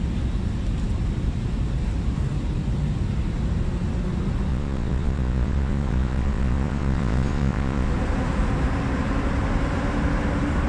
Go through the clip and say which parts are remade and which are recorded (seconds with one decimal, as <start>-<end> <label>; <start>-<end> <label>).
0.0-4.5 recorded; 4.5-7.9 remade; 7.9-10.7 recorded